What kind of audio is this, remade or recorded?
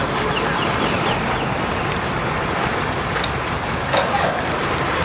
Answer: recorded